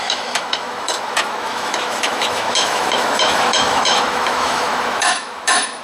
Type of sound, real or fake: fake